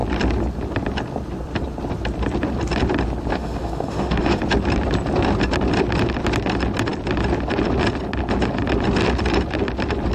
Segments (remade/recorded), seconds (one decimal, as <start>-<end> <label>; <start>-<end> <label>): 0.0-3.3 recorded; 3.3-4.4 remade; 4.4-10.1 recorded